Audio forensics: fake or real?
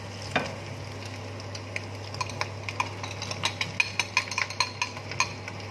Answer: real